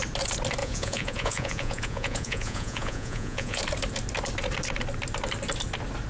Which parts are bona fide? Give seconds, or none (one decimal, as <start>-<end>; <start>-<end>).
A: 0.0-0.6; 3.6-6.1